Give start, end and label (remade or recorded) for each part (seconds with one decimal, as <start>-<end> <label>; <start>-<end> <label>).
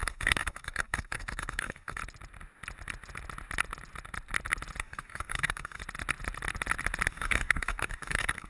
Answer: 0.0-2.0 remade; 2.0-4.8 recorded; 4.8-5.8 remade; 5.8-7.1 recorded; 7.1-8.5 remade